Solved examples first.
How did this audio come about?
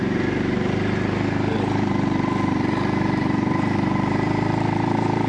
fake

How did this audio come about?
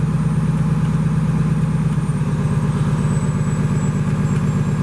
real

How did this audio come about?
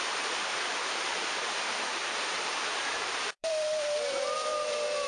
fake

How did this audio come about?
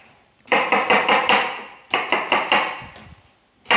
real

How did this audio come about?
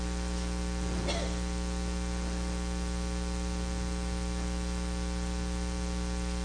real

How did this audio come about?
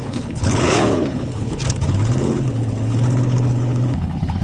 fake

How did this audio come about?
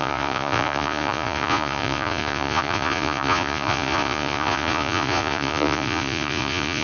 fake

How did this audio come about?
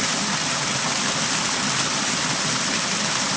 real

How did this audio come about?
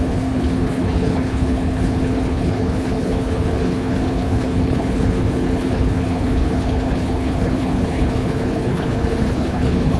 fake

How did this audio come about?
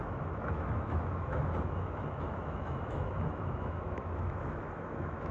fake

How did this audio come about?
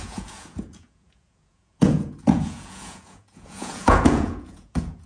fake